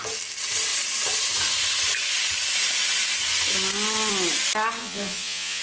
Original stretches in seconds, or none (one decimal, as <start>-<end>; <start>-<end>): 0.0-4.8